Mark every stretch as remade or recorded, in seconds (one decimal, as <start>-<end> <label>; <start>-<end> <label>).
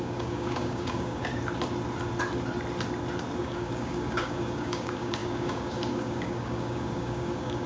0.0-1.3 remade; 1.3-3.4 recorded; 3.4-7.7 remade